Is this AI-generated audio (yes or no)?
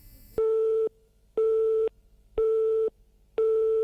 no